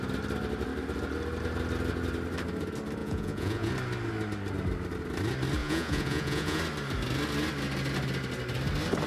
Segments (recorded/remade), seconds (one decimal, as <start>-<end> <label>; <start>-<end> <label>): 0.0-3.0 recorded; 3.0-3.7 remade; 3.7-5.6 recorded; 5.6-6.6 remade; 6.6-9.1 recorded